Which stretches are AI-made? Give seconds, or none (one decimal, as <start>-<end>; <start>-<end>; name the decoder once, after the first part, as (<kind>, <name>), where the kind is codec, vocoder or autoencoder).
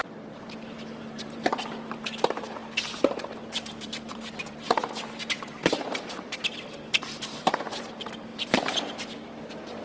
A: 0.0-9.8 (vocoder, BigVGAN v2)